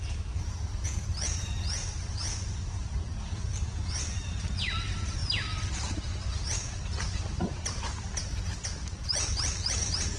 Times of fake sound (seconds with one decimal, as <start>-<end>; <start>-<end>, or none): 0.0-5.2; 7.2-10.2